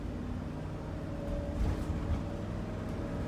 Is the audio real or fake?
real